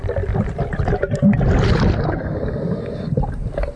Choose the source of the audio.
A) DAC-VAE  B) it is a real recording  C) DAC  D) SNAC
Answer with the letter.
B